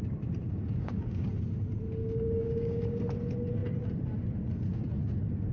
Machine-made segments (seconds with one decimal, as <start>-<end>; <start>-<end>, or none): 0.4-1.3; 2.0-3.0